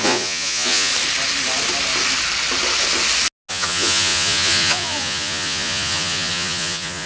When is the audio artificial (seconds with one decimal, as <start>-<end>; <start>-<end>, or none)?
0.0-0.9; 3.5-7.1